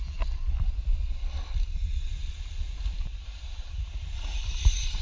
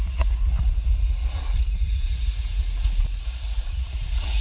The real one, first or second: first